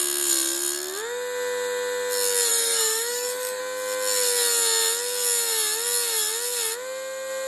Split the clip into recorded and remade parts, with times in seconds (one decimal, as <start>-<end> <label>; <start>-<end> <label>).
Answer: 0.0-2.5 recorded; 2.5-3.6 remade; 3.6-7.5 recorded